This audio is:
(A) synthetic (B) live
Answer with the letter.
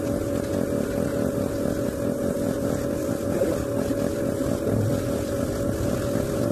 B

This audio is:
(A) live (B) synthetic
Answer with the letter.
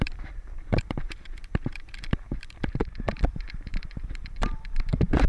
B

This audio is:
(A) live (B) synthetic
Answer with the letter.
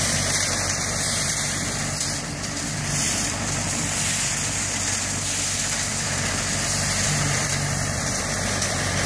B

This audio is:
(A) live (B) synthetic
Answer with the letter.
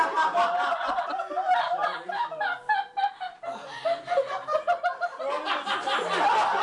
A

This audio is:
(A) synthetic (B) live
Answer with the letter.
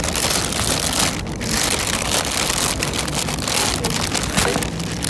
B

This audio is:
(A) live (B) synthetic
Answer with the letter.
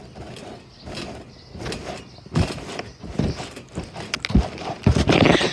A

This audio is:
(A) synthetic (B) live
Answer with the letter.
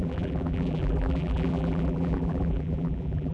A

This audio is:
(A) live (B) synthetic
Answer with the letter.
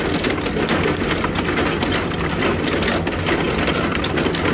A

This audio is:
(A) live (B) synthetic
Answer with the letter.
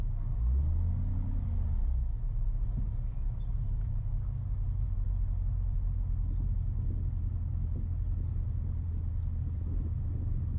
A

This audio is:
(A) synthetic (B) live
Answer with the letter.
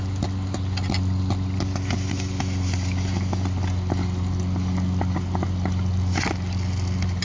B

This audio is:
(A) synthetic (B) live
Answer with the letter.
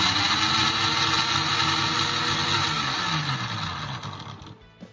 B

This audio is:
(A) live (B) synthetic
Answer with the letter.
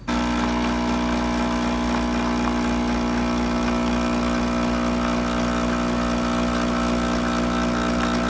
A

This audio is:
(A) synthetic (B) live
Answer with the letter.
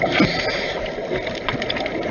B